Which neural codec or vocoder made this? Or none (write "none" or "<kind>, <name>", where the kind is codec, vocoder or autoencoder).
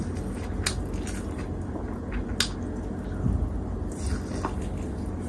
none